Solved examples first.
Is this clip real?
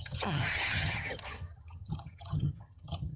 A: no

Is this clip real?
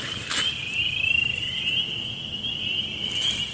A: yes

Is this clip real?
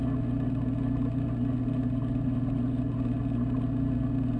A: yes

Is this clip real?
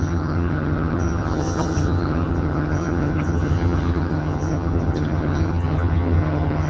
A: no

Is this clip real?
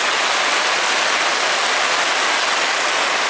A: yes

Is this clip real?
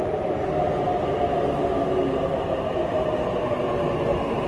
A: yes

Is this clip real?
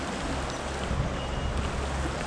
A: yes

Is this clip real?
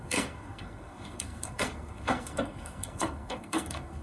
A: no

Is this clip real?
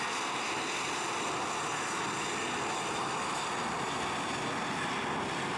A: yes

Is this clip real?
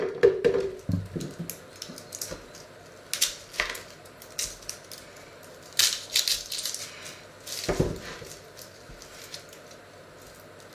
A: yes